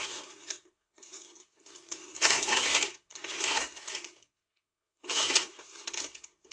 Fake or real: fake